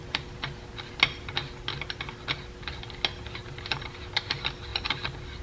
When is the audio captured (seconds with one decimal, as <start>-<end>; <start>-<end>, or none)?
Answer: 0.7-4.7